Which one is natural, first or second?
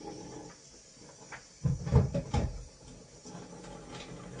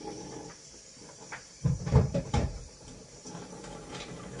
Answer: first